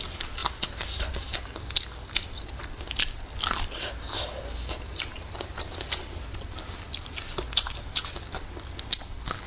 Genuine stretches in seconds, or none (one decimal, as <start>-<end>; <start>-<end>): 0.0-9.5